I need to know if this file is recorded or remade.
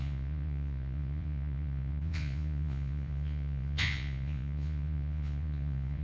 remade